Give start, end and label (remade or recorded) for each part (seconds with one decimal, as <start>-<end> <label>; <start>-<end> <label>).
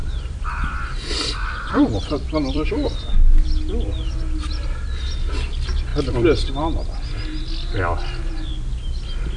0.0-2.7 remade; 2.7-9.4 recorded